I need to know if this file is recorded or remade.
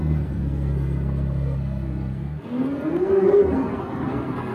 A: remade